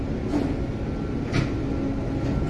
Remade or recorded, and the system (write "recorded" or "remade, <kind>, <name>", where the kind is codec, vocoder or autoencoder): recorded